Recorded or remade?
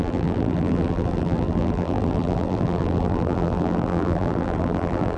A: remade